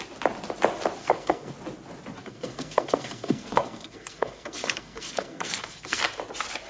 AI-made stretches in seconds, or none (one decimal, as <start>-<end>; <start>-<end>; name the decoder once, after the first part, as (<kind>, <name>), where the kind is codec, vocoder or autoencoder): 1.0-1.5 (codec, SNAC); 2.2-6.0